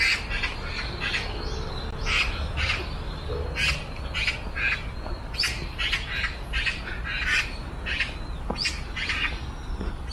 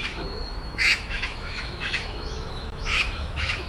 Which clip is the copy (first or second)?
second